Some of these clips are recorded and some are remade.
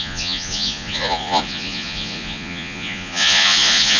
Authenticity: remade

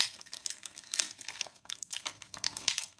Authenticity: remade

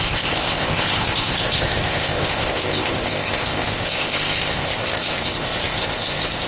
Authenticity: remade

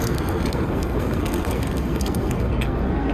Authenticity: remade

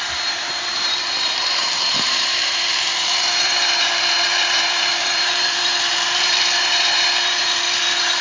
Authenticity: remade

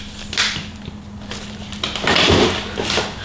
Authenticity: recorded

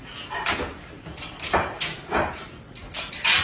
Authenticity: recorded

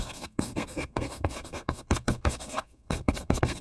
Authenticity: remade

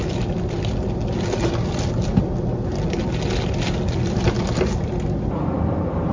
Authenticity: recorded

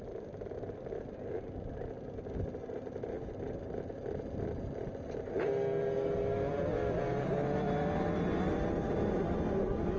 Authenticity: recorded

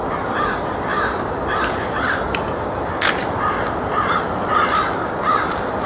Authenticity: recorded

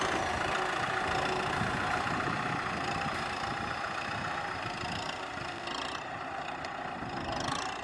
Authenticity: recorded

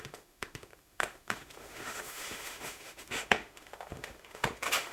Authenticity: remade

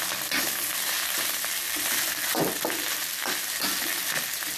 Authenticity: recorded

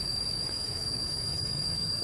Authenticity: remade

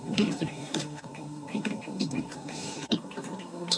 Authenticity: remade